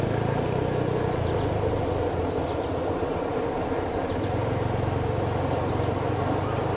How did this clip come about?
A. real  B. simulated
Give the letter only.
A